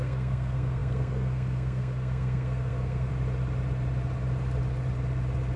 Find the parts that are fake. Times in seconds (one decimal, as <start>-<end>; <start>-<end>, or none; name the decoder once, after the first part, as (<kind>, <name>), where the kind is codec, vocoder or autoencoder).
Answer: 0.0-3.1 (codec, SNAC)